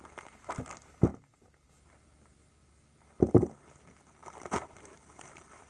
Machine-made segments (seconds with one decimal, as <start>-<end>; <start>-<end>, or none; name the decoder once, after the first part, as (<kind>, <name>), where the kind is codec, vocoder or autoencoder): none